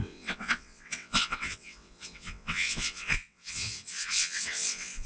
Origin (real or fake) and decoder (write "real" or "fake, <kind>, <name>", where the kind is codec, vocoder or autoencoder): fake, vocoder, WaveNeXt